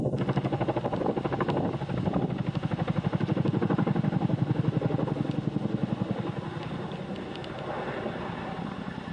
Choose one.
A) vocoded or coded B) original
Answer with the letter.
B